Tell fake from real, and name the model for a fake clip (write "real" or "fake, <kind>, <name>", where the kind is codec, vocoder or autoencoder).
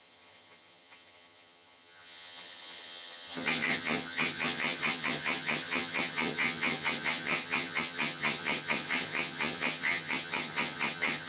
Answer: fake, vocoder, HiFi-GAN